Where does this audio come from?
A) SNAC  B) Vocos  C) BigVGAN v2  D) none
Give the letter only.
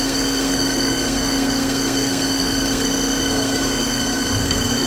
A